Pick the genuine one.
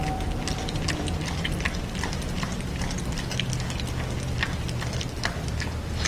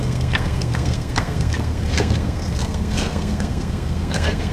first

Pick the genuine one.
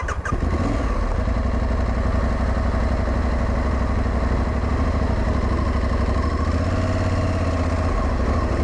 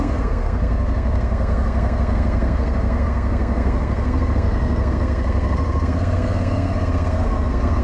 first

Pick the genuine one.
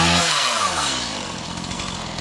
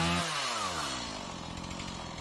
second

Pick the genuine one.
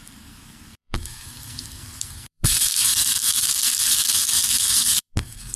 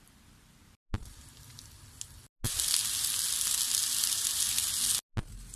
second